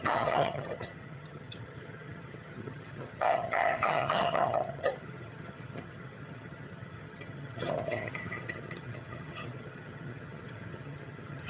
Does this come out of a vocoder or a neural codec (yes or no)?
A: yes